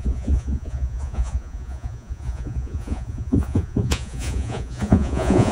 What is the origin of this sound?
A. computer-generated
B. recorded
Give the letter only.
A